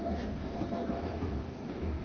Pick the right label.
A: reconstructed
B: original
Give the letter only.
A